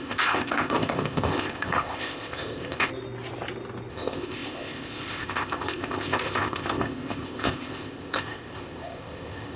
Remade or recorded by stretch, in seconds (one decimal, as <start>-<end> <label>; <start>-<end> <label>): 0.0-2.9 remade; 2.9-3.9 recorded; 3.9-9.6 remade